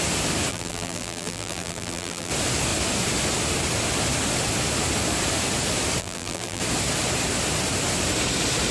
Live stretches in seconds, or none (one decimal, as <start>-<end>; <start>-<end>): 0.0-0.5; 2.3-6.0; 6.6-8.7